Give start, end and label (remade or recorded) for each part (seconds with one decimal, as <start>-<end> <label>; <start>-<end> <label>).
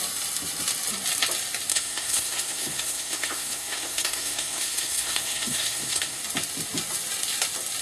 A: 0.0-1.7 recorded; 1.7-6.2 remade; 6.2-7.8 recorded